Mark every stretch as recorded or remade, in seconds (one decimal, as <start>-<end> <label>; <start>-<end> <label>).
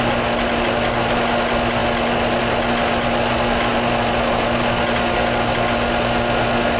0.0-6.8 recorded